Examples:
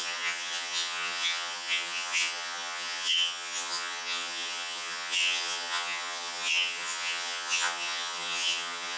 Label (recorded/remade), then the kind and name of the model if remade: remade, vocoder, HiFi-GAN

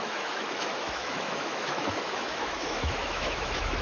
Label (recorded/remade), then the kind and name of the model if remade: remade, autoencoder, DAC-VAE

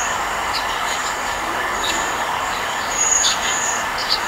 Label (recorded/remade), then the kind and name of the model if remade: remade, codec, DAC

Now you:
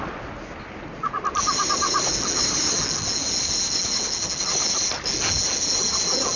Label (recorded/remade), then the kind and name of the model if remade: recorded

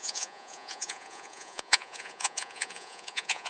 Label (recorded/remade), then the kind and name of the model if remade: remade, vocoder, Vocos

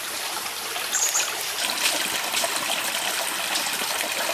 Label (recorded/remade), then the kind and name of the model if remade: recorded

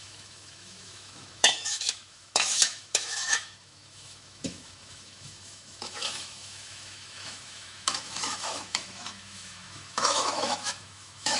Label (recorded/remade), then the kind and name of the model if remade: remade, autoencoder, DAC-VAE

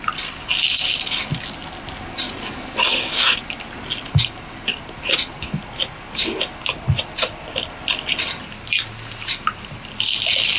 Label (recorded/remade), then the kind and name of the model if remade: recorded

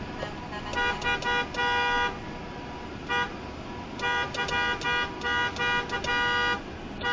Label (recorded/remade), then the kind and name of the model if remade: recorded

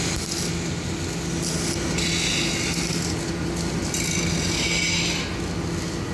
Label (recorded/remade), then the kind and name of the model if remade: recorded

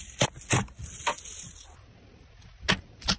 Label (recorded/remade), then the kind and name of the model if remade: recorded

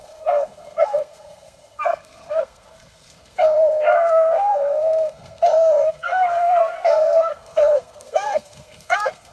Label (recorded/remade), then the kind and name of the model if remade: remade, codec, SNAC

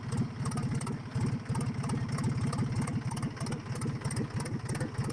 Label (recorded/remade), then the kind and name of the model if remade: recorded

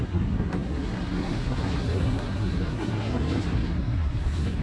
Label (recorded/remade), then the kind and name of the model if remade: remade, codec, SNAC